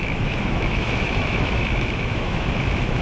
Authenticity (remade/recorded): remade